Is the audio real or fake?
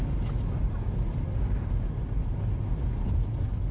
real